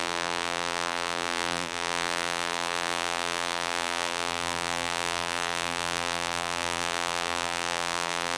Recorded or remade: remade